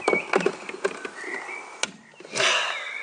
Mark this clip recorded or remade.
recorded